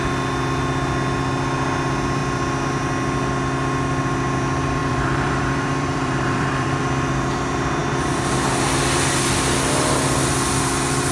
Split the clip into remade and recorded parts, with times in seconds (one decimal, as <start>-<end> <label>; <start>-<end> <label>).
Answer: 0.0-4.8 recorded; 4.8-6.8 remade; 6.8-11.1 recorded